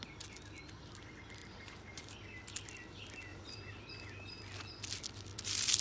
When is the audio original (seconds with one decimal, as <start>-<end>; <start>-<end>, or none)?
0.0-1.4; 2.1-3.3; 3.9-5.8